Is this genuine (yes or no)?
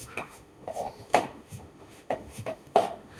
no